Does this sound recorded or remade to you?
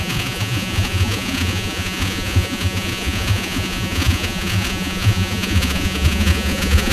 remade